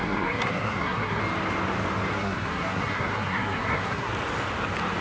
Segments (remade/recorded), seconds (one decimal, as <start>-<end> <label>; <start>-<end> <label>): 0.0-1.2 remade; 1.2-2.1 recorded; 2.1-4.1 remade; 4.1-5.0 recorded